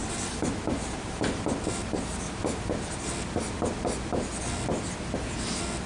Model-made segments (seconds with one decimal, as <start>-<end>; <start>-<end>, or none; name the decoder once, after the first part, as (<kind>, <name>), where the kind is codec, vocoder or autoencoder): none